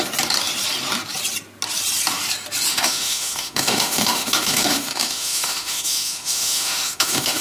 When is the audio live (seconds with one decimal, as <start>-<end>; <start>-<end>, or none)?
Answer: 0.0-2.7